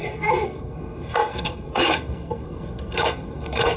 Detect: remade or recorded remade